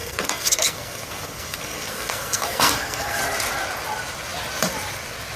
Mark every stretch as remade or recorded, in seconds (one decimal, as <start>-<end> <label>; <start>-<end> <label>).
0.0-3.2 remade; 3.2-5.4 recorded